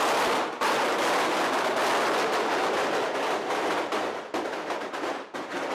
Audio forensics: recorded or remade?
recorded